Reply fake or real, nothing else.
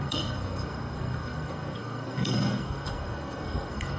fake